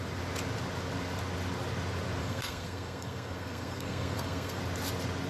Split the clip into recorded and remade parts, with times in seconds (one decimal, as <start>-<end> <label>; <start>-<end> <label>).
0.0-2.2 recorded; 2.2-4.6 remade; 4.6-5.3 recorded